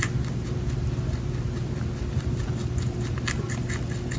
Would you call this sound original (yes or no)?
yes